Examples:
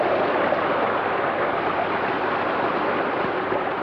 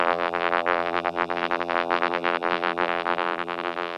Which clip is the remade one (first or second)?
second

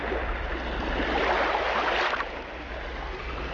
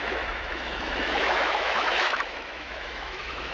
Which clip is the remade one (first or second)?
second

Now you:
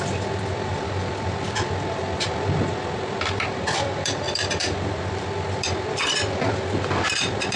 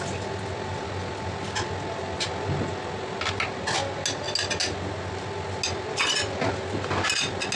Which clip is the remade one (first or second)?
first